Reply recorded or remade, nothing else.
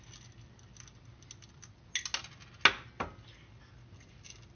recorded